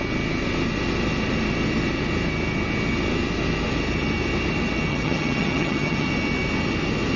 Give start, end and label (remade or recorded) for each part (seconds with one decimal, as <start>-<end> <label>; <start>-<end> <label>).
0.0-4.9 recorded; 4.9-6.1 remade; 6.1-7.2 recorded